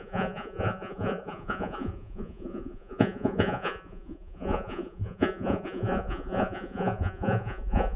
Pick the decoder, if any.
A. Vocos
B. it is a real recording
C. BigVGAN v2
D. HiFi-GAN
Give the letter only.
A